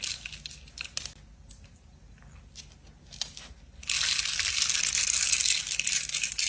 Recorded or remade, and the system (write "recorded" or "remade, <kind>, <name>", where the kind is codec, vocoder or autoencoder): recorded